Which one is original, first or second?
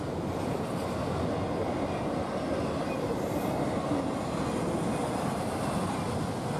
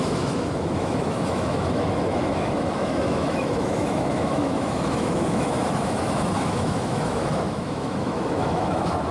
first